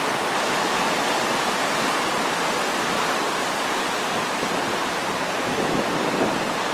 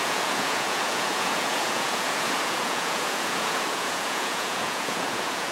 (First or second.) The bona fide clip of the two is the first